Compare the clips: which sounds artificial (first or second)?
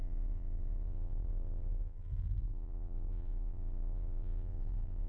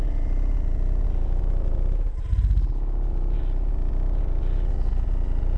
first